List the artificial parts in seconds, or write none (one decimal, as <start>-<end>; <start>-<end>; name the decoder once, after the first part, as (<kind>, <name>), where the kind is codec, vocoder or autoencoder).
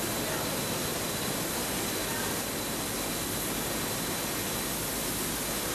0.9-1.6 (vocoder, BigVGAN v2)